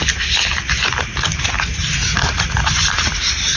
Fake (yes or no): no